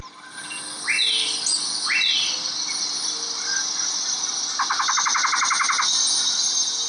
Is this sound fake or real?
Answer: real